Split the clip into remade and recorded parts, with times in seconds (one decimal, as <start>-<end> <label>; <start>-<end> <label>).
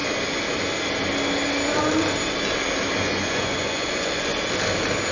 0.0-3.0 recorded; 3.0-4.3 remade; 4.3-5.1 recorded